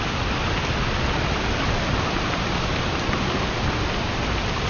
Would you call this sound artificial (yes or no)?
no